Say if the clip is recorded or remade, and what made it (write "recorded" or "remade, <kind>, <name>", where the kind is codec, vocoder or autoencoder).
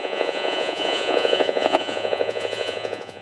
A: remade, vocoder, Vocos